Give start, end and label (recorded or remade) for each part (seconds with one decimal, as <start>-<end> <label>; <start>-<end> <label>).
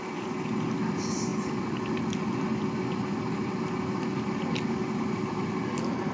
0.0-6.1 recorded